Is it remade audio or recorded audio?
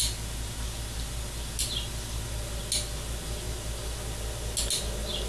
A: recorded